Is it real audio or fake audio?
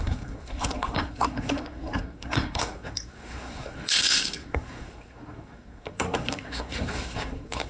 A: fake